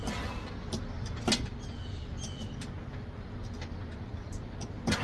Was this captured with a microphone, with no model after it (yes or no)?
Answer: yes